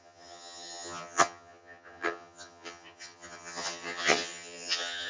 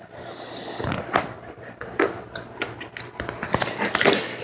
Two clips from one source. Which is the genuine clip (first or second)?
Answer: second